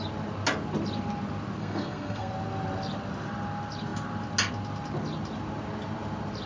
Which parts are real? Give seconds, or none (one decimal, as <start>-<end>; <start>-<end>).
0.0-1.6; 2.3-6.5